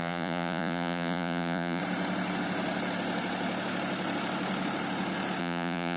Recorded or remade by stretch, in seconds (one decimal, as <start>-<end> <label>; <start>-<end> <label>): 0.0-1.8 remade; 1.8-5.4 recorded; 5.4-6.0 remade